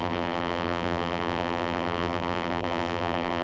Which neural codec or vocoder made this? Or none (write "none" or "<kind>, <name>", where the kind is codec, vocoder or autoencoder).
vocoder, BigVGAN v2